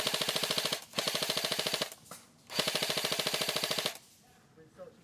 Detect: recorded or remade recorded